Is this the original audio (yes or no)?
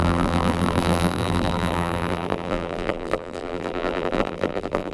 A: no